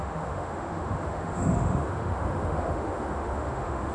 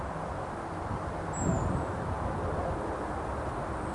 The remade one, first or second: first